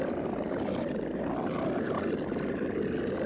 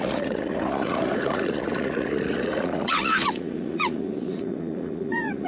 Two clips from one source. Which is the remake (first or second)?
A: second